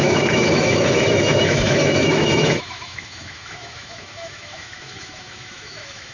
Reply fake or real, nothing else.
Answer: fake